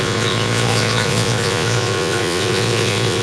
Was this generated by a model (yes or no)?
yes